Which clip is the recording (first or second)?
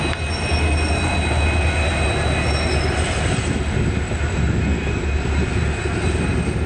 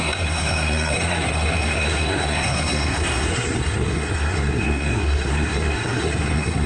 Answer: first